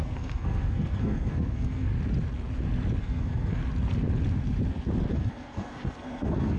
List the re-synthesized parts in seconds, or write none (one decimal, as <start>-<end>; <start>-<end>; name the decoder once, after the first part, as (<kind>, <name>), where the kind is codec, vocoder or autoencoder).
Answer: 0.0-1.9 (codec, SNAC); 3.0-3.6; 5.1-6.6